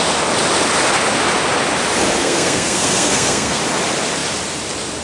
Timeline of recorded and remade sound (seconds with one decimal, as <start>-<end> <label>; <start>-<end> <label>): 0.0-2.2 recorded; 2.2-3.6 remade; 3.6-5.0 recorded